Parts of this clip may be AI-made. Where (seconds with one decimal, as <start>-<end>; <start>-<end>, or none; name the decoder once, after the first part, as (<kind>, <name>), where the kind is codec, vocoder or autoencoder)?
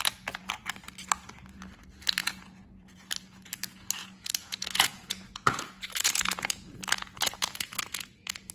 2.2-3.1 (vocoder, Vocos); 4.0-8.5